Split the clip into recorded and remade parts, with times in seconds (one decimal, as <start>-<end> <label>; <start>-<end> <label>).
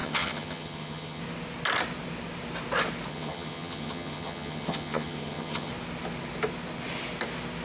0.0-1.2 remade; 1.2-3.1 recorded; 3.1-5.7 remade; 5.7-7.6 recorded